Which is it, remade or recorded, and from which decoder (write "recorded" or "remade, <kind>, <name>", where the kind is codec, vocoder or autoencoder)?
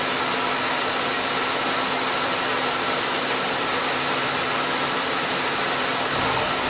recorded